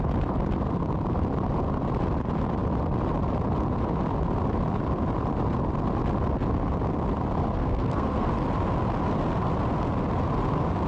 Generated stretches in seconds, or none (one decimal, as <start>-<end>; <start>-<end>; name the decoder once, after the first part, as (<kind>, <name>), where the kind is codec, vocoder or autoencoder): 7.6-8.3 (codec, SNAC)